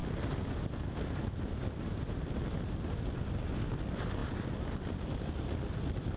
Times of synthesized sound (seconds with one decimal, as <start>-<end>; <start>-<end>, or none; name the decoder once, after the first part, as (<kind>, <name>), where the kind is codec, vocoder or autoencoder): none